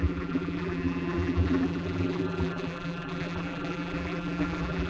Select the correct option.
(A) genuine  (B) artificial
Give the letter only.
B